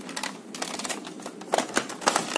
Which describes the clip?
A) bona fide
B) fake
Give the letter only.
A